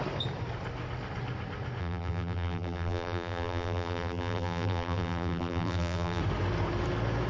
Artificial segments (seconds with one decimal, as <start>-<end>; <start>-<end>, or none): 1.8-6.2